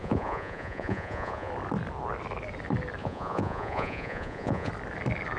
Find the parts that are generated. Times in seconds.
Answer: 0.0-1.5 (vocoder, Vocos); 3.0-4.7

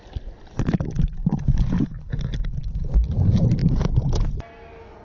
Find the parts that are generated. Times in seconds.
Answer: none